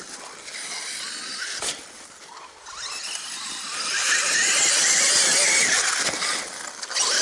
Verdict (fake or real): real